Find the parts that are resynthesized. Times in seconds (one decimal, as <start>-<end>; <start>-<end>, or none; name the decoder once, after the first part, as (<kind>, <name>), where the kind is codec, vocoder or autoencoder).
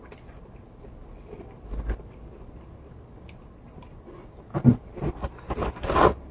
none